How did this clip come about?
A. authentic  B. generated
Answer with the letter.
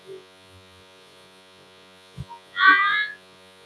B